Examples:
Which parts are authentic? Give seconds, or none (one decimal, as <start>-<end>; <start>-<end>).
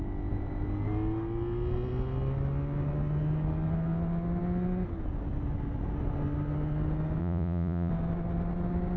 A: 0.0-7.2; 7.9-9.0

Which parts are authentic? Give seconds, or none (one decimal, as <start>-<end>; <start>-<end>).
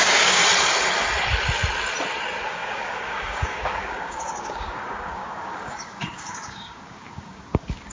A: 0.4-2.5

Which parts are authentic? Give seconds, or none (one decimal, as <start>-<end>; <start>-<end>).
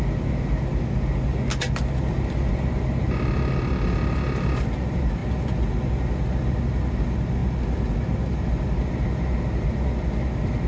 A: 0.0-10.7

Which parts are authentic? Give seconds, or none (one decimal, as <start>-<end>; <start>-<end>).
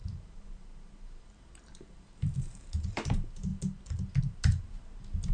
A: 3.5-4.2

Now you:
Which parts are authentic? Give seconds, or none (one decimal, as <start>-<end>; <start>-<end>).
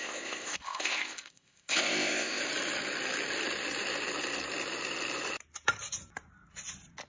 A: 2.4-7.1